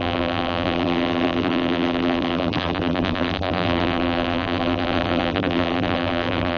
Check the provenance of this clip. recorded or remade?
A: remade